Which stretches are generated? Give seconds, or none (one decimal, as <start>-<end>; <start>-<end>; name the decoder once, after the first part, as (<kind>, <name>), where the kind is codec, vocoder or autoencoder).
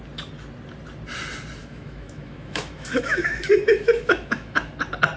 1.6-4.7 (autoencoder, DAC-VAE)